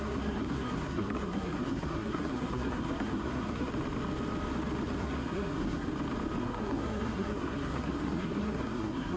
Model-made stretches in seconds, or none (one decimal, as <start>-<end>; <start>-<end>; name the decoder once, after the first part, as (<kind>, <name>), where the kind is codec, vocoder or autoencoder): 0.0-3.7 (codec, SNAC); 5.0-5.9; 6.4-9.2